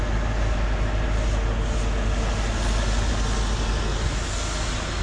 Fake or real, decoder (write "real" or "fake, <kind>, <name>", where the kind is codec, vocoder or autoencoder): real